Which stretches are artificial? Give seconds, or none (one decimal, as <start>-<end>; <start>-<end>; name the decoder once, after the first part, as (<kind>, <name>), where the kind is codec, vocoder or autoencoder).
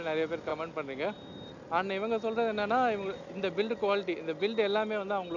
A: none